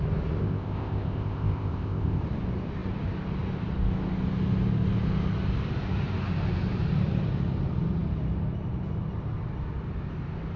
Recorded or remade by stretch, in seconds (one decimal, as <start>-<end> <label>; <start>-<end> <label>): 0.0-0.4 recorded; 0.4-2.2 remade; 2.2-10.6 recorded